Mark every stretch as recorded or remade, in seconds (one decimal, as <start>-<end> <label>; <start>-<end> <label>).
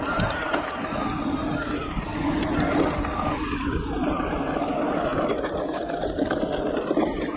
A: 0.0-7.4 recorded